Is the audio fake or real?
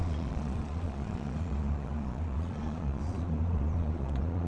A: fake